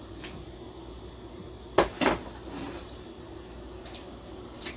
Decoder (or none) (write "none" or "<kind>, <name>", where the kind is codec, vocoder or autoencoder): none